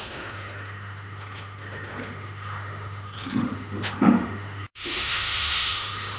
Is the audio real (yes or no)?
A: no